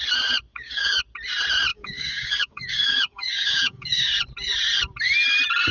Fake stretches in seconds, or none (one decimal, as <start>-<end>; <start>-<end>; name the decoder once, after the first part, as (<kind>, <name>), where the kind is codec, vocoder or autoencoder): 0.5-1.0 (codec, DAC); 1.7-4.1